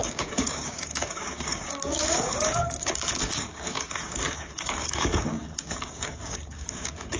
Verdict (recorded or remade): remade